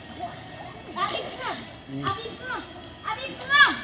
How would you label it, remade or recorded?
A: recorded